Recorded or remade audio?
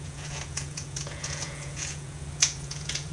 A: remade